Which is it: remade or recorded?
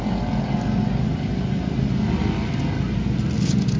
recorded